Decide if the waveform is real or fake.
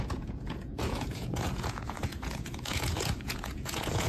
fake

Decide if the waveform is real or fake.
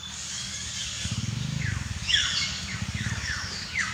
fake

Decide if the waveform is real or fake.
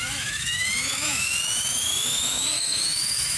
fake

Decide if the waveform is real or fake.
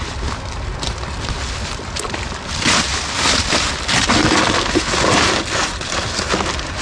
real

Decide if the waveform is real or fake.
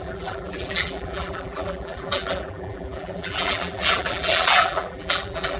fake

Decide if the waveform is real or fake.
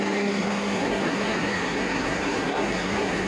fake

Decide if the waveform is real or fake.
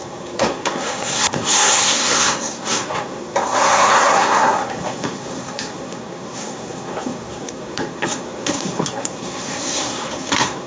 fake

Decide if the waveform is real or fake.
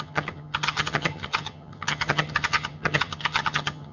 fake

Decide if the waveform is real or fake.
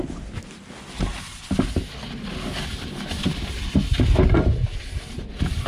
real